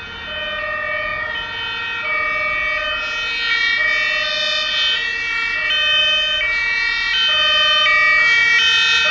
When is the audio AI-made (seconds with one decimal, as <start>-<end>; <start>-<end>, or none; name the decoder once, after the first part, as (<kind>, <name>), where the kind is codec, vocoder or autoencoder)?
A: none

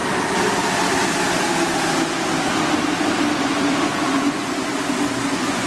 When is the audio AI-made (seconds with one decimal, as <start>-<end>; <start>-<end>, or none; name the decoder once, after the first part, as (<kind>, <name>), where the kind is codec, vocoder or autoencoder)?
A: 3.4-4.7 (vocoder, Vocos); 5.3-5.7

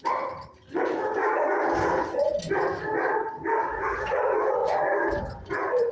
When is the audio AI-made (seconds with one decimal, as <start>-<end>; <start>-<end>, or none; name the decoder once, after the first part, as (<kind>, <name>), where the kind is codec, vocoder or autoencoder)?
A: none

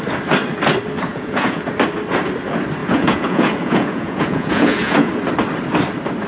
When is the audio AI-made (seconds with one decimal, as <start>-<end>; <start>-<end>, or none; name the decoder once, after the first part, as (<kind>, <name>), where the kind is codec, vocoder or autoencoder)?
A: 1.1-1.7 (vocoder, Vocos); 2.8-5.1

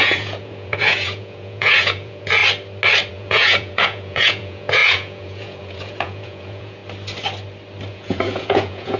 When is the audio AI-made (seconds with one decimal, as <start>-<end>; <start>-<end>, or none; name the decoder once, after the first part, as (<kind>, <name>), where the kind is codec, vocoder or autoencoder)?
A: 0.0-2.4 (vocoder, Vocos); 3.1-6.8; 7.9-9.0

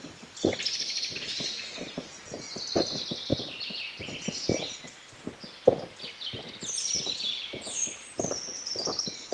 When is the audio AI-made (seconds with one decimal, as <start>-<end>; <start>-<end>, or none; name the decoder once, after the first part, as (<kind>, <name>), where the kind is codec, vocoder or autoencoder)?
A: none

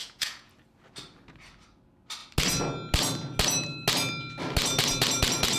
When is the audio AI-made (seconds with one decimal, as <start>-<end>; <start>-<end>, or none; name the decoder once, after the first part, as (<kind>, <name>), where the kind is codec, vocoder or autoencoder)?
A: 0.0-0.5 (vocoder, Vocos)